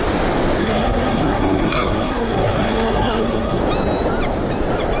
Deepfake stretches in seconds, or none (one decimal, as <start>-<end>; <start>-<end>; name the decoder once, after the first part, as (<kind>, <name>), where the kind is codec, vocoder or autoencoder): 0.6-3.6 (codec, SNAC)

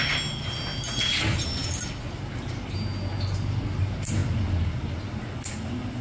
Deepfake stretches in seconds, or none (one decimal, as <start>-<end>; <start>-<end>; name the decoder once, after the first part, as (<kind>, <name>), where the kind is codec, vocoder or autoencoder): none

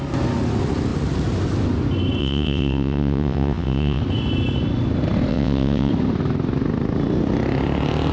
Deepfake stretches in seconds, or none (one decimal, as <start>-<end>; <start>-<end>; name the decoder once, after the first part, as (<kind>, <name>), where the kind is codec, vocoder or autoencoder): 2.2-4.0 (vocoder, WaveNeXt); 5.3-5.9

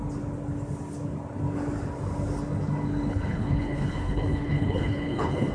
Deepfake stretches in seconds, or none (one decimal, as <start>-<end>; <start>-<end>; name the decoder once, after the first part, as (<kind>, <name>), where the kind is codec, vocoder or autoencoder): 3.1-5.5 (codec, HILCodec)

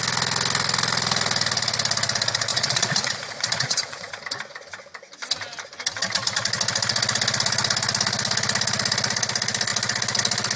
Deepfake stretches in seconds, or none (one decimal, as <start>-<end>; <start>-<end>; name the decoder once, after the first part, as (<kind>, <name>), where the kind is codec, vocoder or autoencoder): 2.5-4.1 (vocoder, Vocos)

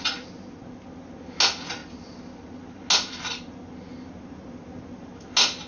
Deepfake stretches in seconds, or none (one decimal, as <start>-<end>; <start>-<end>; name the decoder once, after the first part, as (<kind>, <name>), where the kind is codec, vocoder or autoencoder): none